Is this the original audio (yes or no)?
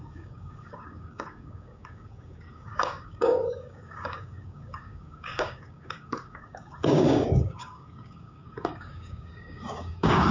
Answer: no